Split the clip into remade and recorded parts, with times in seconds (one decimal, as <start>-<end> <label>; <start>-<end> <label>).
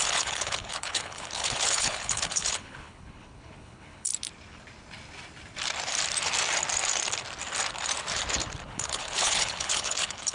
0.0-4.1 remade; 4.1-8.6 recorded; 8.6-10.3 remade